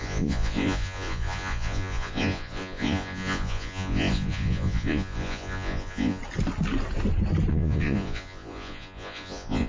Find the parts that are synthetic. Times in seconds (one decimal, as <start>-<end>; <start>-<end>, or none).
0.0-6.2; 7.5-9.7